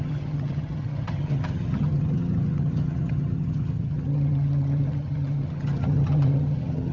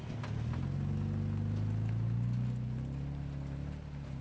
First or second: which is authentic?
second